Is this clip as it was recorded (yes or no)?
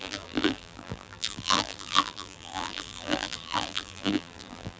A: no